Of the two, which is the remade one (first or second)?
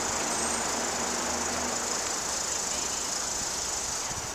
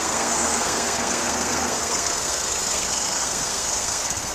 second